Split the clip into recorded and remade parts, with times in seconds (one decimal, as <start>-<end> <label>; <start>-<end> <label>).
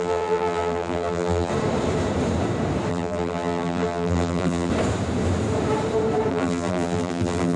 0.0-1.5 remade; 1.5-2.9 recorded; 2.9-4.7 remade; 4.7-6.3 recorded; 6.3-7.6 remade